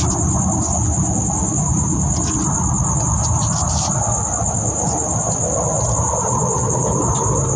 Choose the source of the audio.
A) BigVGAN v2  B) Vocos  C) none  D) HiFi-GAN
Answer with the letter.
C